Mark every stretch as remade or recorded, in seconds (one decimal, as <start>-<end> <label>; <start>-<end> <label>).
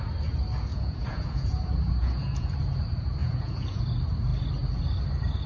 0.0-0.7 recorded; 0.7-2.5 remade; 2.5-3.2 recorded; 3.2-3.8 remade; 3.8-5.5 recorded